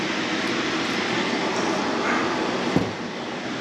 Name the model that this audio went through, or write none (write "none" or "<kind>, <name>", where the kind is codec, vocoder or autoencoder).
none